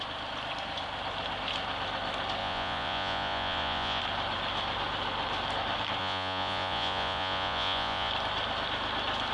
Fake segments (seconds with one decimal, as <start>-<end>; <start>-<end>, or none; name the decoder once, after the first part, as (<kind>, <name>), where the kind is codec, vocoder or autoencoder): 2.4-4.0 (vocoder, Vocos); 6.0-8.1